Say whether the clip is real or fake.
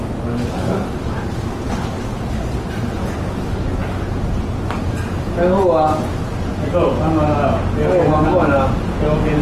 real